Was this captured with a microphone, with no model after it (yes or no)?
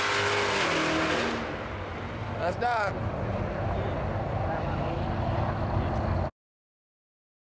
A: yes